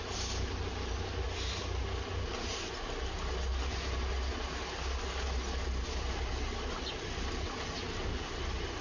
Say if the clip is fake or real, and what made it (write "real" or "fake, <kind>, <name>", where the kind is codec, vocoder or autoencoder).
real